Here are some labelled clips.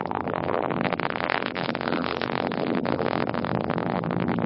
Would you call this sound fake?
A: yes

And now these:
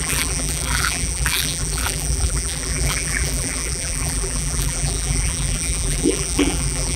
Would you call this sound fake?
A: yes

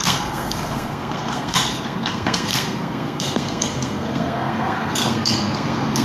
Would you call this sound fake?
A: yes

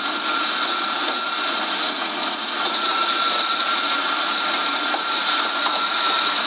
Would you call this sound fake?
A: yes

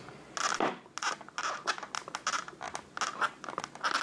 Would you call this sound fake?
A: no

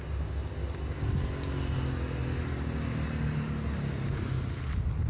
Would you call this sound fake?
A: no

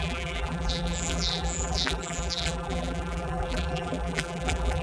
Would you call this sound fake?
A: yes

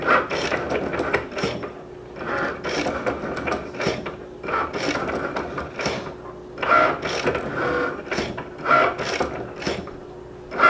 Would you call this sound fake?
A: no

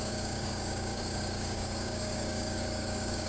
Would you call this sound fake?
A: yes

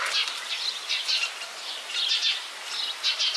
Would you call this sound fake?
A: no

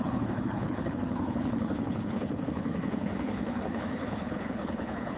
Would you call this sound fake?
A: yes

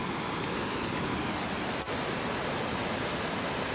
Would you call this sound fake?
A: no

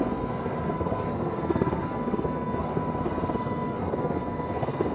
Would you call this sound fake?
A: yes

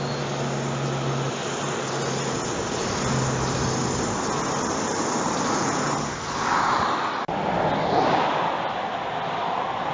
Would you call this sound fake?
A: no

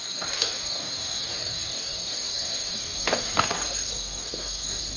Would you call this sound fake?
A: yes